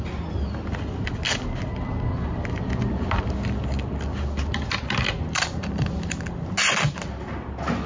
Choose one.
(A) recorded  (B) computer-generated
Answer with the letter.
A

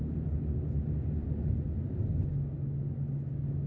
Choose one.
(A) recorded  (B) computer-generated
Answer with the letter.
A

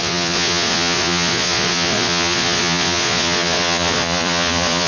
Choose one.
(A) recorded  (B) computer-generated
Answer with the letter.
B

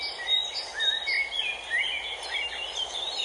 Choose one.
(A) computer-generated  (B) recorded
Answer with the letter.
B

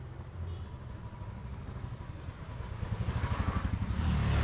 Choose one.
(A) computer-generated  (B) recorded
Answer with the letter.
B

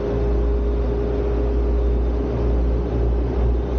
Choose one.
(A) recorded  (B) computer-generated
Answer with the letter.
A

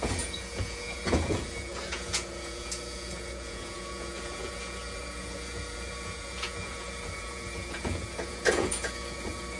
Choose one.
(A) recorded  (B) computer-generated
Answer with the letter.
B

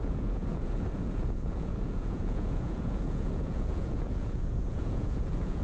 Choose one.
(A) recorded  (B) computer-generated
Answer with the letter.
B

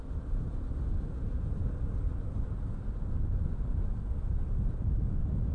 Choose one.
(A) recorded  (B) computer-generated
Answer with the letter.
A